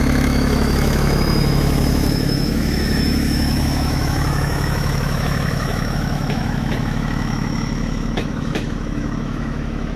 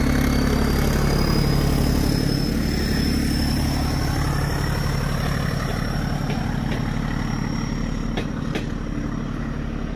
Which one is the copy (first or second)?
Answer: first